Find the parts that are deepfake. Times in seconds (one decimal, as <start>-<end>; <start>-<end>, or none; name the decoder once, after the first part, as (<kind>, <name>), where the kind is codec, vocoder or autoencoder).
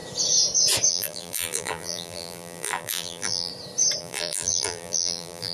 0.9-3.5 (vocoder, BigVGAN v2); 4.0-5.5